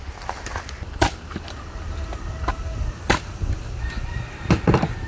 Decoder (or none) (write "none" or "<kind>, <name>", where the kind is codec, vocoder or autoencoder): none